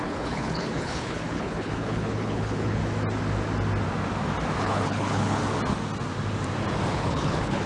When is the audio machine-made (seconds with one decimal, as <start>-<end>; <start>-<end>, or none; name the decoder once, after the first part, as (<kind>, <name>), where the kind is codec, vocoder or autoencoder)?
0.0-2.8 (codec, HILCodec); 4.6-5.4; 6.9-7.7

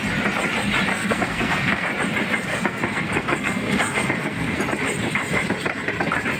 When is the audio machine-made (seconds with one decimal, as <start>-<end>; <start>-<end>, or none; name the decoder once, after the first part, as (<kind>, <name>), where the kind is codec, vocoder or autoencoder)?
0.9-1.9 (codec, SNAC); 2.5-4.6

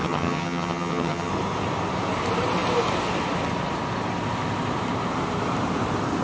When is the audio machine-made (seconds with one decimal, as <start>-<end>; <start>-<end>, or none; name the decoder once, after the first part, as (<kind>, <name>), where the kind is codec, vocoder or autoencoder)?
0.0-1.3 (vocoder, HiFi-GAN)

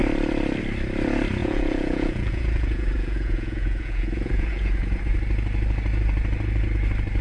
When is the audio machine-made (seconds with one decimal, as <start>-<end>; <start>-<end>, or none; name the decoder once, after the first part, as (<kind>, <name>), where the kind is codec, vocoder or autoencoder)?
1.4-5.0 (vocoder, Vocos)